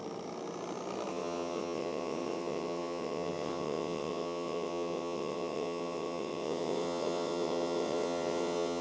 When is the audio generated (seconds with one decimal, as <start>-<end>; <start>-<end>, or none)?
1.1-8.8